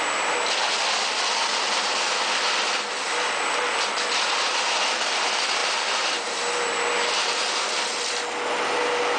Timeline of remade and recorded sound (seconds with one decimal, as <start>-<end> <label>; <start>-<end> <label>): 0.0-9.2 recorded